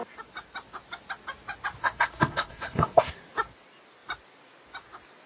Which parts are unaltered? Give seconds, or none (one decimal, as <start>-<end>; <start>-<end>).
0.0-1.8; 3.1-5.3